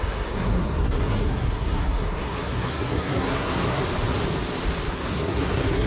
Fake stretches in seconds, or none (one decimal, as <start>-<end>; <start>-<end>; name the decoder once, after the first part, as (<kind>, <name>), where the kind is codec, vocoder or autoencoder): 0.0-3.8 (codec, SNAC); 4.9-5.9